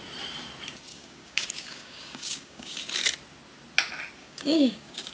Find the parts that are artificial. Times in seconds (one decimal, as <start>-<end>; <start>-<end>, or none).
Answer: 0.9-2.8; 4.2-5.1